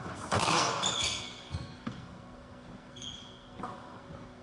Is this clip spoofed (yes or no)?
yes